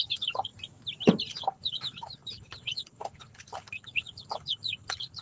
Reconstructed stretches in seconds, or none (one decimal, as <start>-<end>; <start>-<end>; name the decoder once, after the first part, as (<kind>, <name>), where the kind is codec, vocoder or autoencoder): 0.0-0.5 (codec, HILCodec); 1.3-5.2